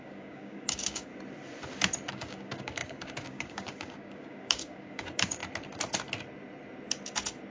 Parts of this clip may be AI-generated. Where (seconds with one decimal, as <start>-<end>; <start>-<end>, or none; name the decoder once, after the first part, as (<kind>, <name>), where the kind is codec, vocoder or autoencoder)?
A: 0.0-1.1 (codec, DAC); 2.1-5.4